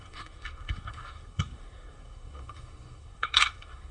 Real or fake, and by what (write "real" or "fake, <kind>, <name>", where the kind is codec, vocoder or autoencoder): fake, codec, SNAC